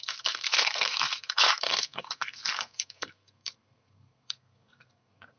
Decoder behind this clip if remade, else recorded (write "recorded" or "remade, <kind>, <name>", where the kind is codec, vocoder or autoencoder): remade, codec, SNAC